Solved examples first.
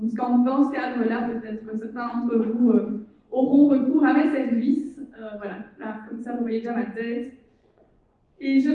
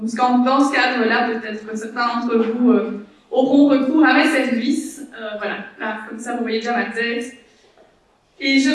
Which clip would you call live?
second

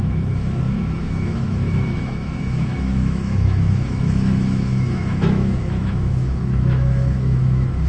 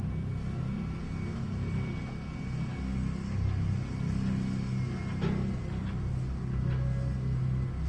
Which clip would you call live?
second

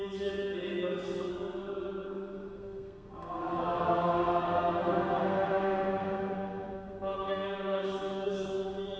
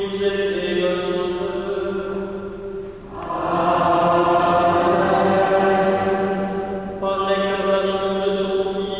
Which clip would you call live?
second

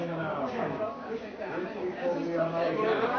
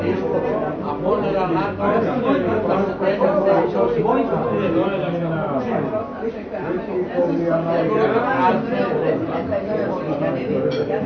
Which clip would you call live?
second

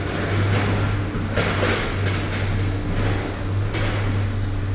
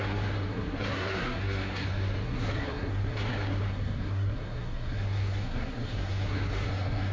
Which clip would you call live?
first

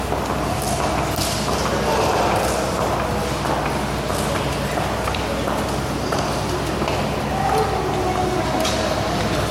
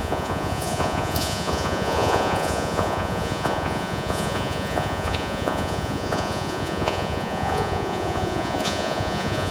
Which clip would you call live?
first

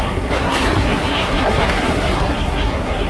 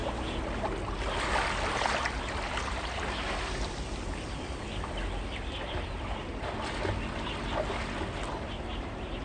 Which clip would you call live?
second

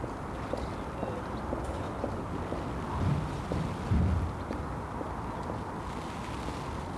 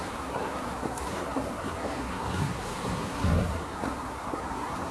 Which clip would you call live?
first